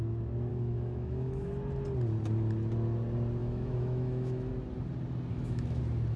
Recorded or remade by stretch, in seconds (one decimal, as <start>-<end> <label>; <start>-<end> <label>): 0.0-0.5 recorded; 0.5-1.5 remade; 1.5-3.4 recorded; 3.4-4.5 remade; 4.5-5.3 recorded; 5.3-5.8 remade; 5.8-6.2 recorded